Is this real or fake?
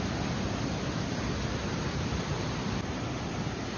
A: real